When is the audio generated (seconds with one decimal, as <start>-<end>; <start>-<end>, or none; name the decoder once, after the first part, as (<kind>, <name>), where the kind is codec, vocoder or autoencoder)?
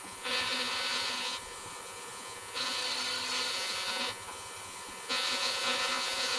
0.0-2.8 (vocoder, Vocos); 3.5-6.4